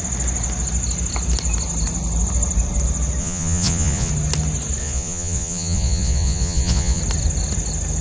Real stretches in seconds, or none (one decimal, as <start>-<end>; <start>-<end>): 0.0-3.2; 4.1-4.8; 7.0-8.0